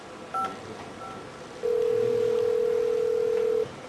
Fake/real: real